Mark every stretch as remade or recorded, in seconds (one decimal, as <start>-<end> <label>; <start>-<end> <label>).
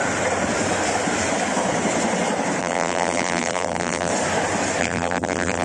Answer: 0.0-2.6 recorded; 2.6-4.1 remade; 4.1-4.8 recorded; 4.8-5.6 remade